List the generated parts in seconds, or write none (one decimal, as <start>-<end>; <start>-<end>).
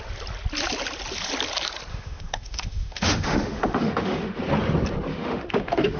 1.9-4.4; 5.1-6.0